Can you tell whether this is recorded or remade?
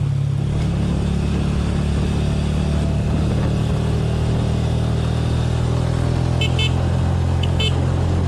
recorded